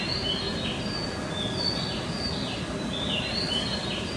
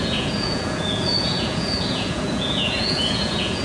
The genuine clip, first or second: first